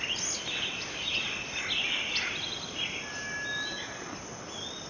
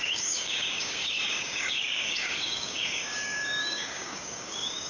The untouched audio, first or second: first